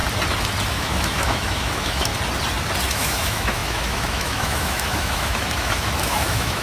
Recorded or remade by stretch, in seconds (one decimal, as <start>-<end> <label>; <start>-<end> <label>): 0.0-0.7 recorded; 0.7-2.1 remade; 2.1-2.9 recorded; 2.9-6.6 remade